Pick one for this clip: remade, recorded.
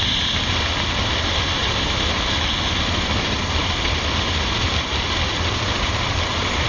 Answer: recorded